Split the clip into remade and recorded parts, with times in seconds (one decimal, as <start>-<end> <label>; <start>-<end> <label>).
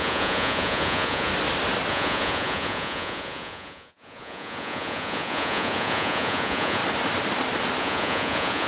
0.0-1.3 remade; 1.3-1.9 recorded; 1.9-6.8 remade; 6.8-7.8 recorded; 7.8-8.7 remade